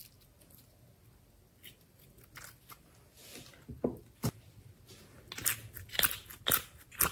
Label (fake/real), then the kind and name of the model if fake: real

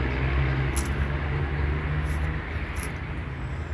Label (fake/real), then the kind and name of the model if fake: real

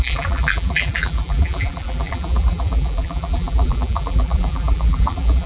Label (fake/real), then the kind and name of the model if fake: fake, vocoder, BigVGAN v2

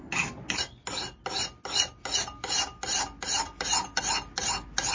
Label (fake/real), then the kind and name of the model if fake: real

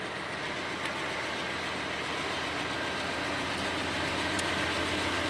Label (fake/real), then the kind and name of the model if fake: real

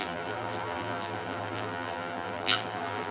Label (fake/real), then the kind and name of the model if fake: fake, vocoder, BigVGAN v2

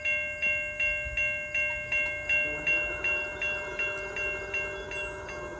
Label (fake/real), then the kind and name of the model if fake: real